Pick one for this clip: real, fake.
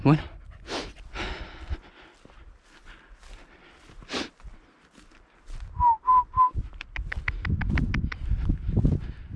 real